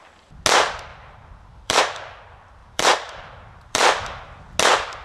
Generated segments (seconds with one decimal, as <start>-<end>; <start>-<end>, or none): 0.9-1.8; 2.6-4.4